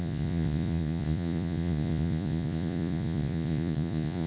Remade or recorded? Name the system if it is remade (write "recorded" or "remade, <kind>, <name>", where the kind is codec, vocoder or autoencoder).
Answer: remade, vocoder, Vocos